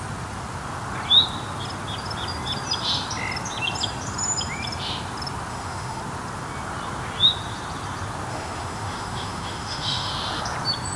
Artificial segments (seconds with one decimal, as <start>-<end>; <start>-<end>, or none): 5.5-6.0; 8.3-10.1